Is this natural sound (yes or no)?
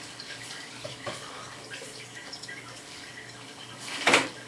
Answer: no